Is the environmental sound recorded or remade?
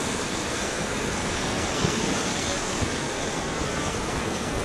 remade